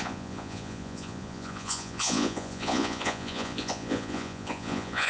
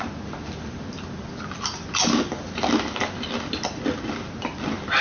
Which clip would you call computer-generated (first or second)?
first